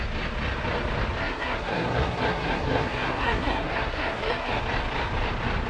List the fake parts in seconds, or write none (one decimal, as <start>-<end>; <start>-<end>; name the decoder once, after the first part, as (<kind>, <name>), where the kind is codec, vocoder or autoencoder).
1.2-4.6 (codec, SNAC)